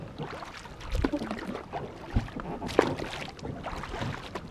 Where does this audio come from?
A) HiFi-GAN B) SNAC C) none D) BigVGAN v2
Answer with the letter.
C